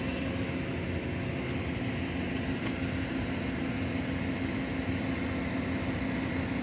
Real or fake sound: real